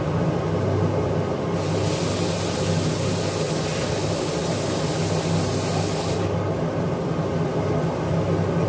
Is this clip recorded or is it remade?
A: recorded